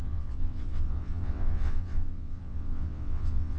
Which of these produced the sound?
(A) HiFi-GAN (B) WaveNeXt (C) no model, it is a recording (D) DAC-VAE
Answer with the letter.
B